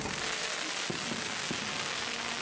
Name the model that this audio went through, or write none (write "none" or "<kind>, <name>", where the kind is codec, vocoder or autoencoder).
none